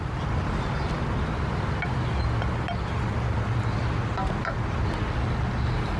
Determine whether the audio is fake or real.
real